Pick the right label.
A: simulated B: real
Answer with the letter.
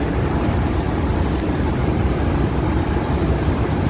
B